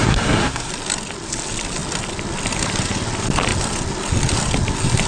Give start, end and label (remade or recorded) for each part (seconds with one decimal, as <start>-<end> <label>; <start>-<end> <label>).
0.0-0.7 remade; 0.7-5.1 recorded